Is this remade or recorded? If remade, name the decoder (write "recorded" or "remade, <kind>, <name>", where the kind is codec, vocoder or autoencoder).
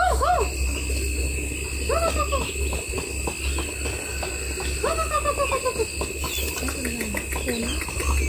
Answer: recorded